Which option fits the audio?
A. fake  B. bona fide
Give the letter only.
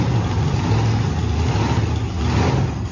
B